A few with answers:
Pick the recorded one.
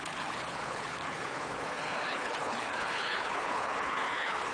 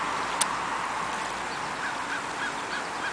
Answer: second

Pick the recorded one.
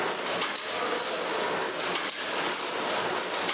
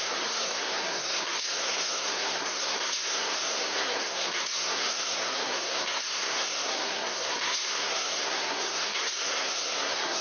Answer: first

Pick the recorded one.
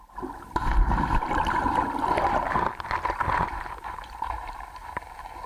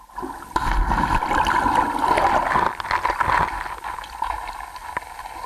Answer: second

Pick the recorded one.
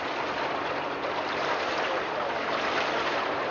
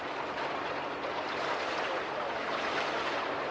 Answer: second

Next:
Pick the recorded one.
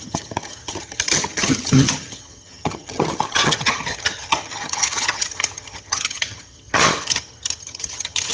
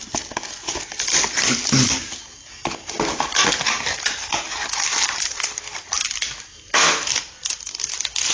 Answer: second